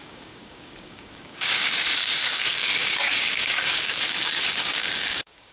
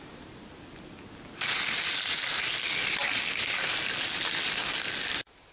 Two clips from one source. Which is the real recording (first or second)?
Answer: second